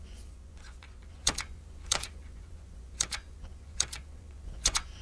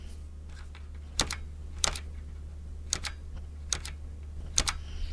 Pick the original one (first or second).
second